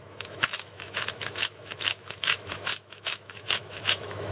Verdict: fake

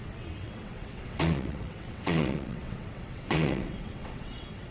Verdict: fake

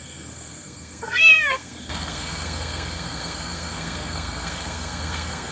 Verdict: fake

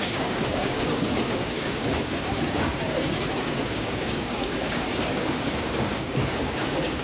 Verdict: fake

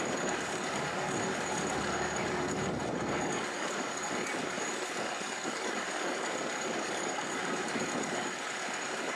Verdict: fake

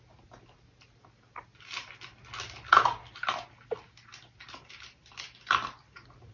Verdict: real